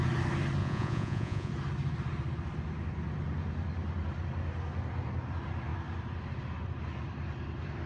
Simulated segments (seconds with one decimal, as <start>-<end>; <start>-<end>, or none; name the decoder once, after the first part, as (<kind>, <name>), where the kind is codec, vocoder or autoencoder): 0.6-1.5 (vocoder, Vocos)